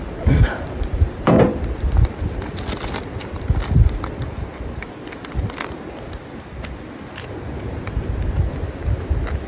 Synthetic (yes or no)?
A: no